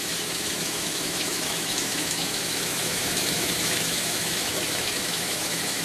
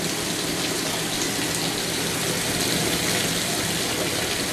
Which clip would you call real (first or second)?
second